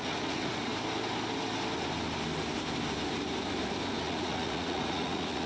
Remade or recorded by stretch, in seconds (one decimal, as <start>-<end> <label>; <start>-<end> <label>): 0.0-0.7 remade; 0.7-4.0 recorded; 4.0-5.5 remade